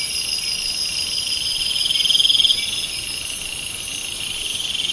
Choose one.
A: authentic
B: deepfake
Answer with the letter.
A